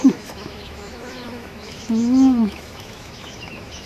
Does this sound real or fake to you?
fake